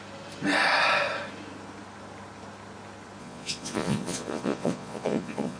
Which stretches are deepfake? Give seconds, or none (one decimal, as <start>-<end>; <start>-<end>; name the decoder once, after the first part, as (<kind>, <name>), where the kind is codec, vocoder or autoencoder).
3.2-5.6 (vocoder, Vocos)